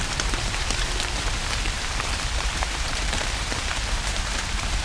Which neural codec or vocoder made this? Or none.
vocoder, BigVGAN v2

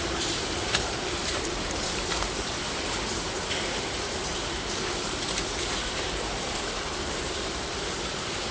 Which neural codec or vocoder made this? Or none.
vocoder, BigVGAN v2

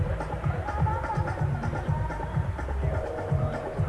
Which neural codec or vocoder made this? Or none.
vocoder, BigVGAN v2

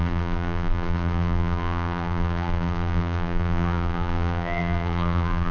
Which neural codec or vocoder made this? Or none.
vocoder, BigVGAN v2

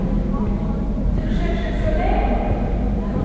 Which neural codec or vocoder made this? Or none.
vocoder, BigVGAN v2